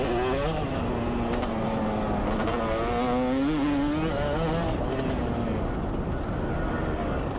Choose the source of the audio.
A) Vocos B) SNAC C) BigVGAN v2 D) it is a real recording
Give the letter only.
D